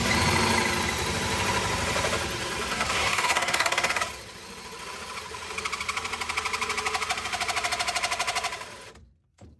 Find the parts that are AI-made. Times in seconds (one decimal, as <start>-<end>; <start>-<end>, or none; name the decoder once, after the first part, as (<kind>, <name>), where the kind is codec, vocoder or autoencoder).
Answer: 2.7-4.0 (codec, SNAC)